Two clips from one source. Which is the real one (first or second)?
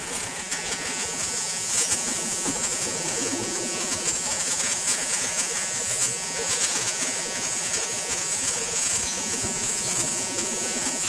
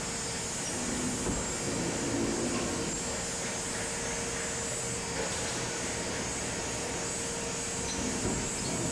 second